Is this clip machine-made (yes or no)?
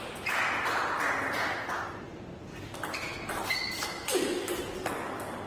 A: no